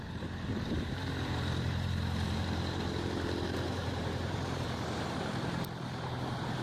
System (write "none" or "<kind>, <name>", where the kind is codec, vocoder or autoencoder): vocoder, BigVGAN v2